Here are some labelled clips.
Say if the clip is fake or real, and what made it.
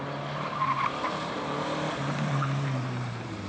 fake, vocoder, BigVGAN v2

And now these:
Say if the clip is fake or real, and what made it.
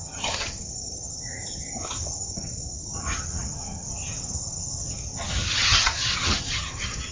fake, vocoder, HiFi-GAN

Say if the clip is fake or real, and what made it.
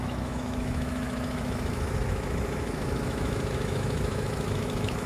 fake, autoencoder, DAC-VAE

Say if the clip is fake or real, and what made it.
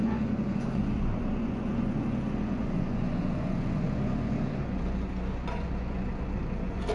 fake, vocoder, Vocos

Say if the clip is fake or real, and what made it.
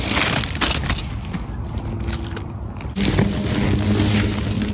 real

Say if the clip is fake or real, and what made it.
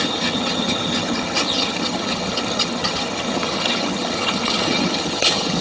fake, vocoder, HiFi-GAN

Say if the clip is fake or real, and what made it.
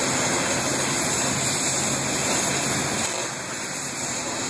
real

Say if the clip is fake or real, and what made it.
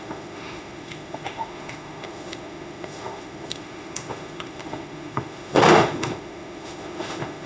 fake, autoencoder, DAC-VAE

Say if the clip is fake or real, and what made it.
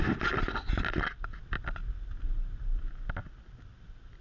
real